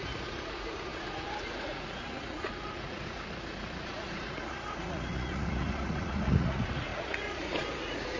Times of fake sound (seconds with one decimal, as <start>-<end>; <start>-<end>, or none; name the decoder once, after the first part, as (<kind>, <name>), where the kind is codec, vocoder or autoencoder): 0.0-8.2 (vocoder, Vocos)